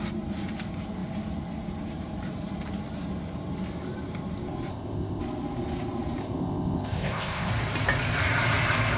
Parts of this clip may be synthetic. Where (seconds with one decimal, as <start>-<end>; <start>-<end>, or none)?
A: 4.7-5.2; 6.2-7.5